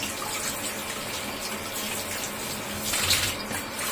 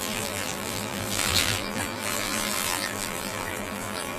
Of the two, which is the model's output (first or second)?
second